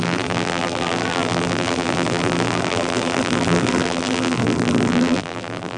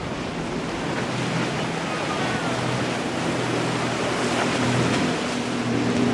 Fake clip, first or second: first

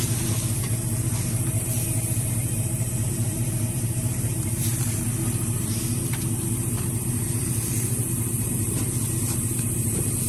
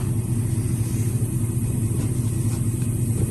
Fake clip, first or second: first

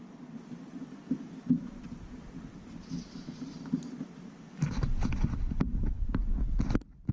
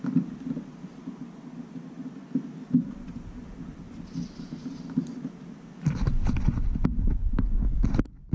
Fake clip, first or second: first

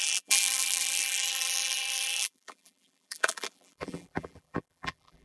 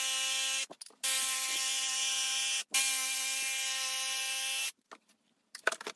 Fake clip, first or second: first